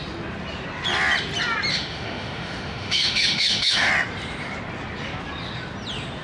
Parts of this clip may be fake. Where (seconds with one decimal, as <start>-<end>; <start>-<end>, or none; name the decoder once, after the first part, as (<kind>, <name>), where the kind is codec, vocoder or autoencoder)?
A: 1.7-3.9 (autoencoder, DAC-VAE)